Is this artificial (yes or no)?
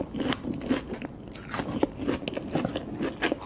no